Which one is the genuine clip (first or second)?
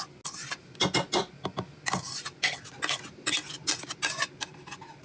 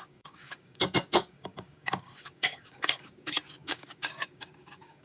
first